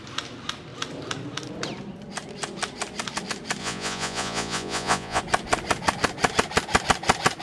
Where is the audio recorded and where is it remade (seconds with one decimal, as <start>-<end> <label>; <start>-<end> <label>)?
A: 0.0-3.6 recorded; 3.6-5.2 remade; 5.2-7.4 recorded